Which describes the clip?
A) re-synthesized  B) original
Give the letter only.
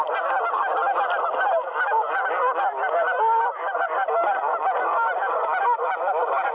B